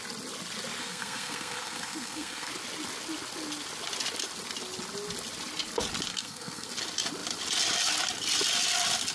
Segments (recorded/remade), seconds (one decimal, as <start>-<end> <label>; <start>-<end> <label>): 0.0-0.8 recorded; 0.8-2.5 remade; 2.5-6.1 recorded; 6.1-6.7 remade; 6.7-9.1 recorded